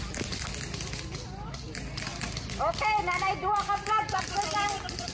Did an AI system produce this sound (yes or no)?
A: no